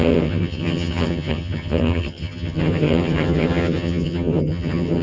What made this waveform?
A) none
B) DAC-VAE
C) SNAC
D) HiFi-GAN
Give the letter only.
D